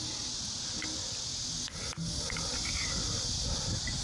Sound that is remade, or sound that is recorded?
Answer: recorded